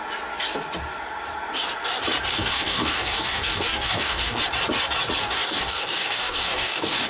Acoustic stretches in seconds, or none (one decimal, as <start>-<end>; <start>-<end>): 0.0-2.3; 4.4-5.2